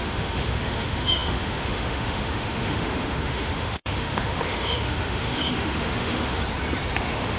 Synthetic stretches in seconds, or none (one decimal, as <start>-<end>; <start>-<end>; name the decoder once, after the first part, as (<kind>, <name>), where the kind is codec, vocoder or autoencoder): 0.0-6.4 (autoencoder, DAC-VAE); 7.0-7.4